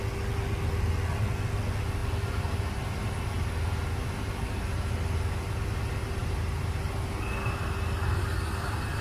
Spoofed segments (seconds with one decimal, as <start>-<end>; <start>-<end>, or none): none